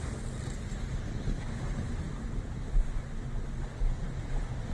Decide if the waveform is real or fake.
real